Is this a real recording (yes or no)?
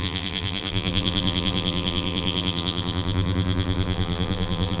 no